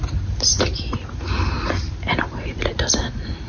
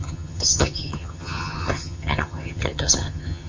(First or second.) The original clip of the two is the first